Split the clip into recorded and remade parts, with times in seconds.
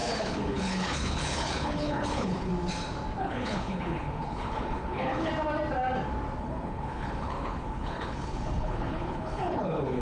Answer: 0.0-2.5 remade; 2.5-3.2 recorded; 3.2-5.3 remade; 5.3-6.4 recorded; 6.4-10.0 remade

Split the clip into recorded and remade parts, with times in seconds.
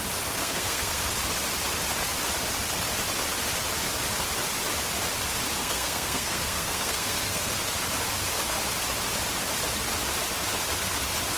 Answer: 0.0-0.4 recorded; 0.4-1.0 remade; 1.0-5.6 recorded; 5.6-7.5 remade; 7.5-11.4 recorded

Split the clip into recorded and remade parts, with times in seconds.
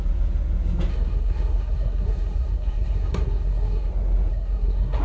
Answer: 0.0-0.9 recorded; 0.9-3.9 remade; 3.9-4.3 recorded; 4.3-5.0 remade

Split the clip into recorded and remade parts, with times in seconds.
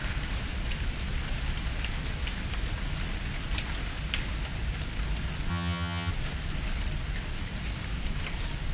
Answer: 0.0-5.5 recorded; 5.5-6.1 remade; 6.1-8.7 recorded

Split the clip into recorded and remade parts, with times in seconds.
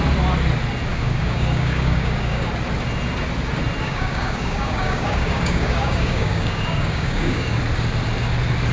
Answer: 0.0-0.9 recorded; 0.9-2.5 remade; 2.5-3.8 recorded; 3.8-7.6 remade; 7.6-8.7 recorded